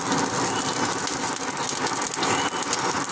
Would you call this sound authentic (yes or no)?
yes